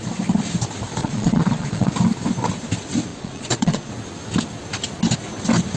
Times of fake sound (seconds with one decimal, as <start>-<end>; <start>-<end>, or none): 1.0-1.9; 3.1-3.9